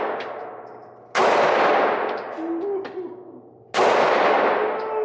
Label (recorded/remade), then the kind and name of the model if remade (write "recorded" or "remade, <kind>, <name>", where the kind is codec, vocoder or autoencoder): recorded